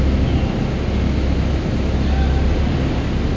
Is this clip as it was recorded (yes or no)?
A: yes